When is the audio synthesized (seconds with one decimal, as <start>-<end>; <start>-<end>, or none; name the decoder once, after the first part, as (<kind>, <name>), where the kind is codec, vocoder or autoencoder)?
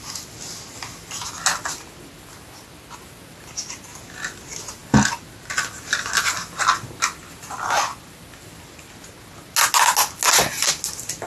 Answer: none